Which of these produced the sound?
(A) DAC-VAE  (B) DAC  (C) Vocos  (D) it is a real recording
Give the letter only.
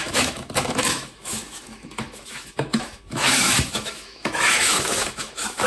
A